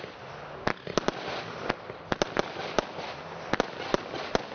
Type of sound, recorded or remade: recorded